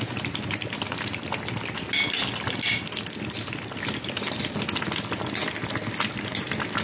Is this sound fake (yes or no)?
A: no